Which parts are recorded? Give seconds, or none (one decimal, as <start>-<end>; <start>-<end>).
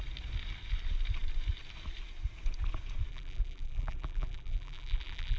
0.0-3.1